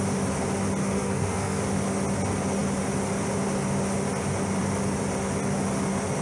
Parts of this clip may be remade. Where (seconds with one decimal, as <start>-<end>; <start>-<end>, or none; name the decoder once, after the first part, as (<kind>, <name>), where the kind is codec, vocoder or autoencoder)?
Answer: 0.8-1.6 (codec, SNAC)